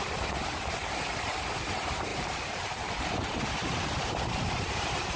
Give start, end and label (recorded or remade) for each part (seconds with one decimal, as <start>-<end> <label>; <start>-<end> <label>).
0.0-2.1 recorded; 2.1-5.2 remade